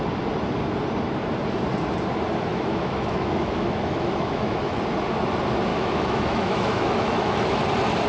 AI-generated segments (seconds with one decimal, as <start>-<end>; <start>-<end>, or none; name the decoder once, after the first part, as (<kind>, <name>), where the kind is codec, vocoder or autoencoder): 2.5-4.8 (autoencoder, DAC-VAE); 5.7-7.6